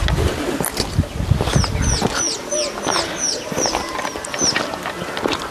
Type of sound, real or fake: real